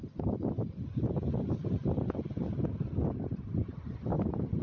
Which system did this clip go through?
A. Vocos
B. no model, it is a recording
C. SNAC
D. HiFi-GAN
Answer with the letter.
B